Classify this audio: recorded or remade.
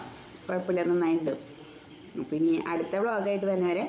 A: remade